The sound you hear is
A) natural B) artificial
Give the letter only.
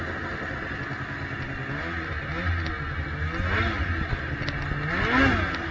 A